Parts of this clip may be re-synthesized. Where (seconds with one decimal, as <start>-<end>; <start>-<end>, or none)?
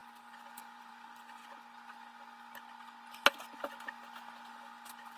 0.0-1.4; 4.5-5.2